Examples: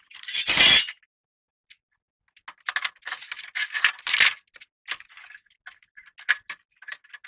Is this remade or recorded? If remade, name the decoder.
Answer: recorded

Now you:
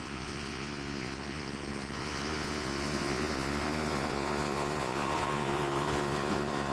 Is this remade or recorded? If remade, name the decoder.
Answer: remade, vocoder, Vocos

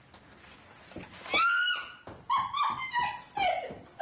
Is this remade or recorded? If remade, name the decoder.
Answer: recorded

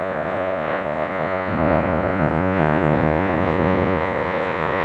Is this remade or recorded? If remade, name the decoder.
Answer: remade, vocoder, Vocos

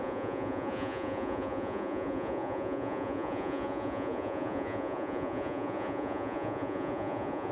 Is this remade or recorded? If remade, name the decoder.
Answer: remade, vocoder, Vocos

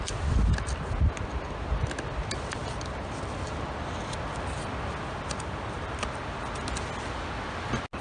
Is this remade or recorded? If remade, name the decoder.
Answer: recorded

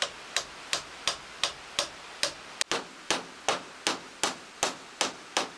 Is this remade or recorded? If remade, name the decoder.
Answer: recorded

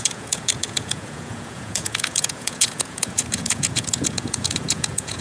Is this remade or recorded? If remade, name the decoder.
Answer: remade, vocoder, Vocos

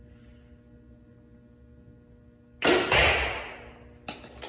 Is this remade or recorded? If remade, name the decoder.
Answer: recorded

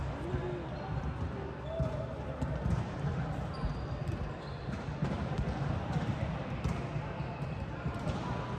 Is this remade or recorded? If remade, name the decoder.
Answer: recorded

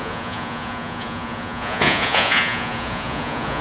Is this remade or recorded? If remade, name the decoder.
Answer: remade, vocoder, Vocos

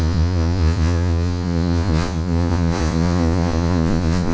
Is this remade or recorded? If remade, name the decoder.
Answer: remade, vocoder, Vocos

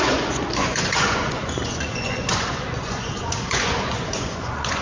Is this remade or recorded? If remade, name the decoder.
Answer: remade, vocoder, Vocos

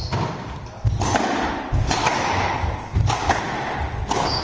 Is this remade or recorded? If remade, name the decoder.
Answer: recorded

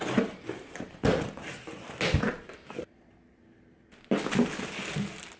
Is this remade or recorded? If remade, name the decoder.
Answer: recorded